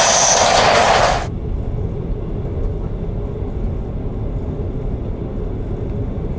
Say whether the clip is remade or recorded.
recorded